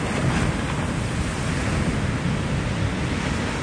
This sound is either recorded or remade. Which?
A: recorded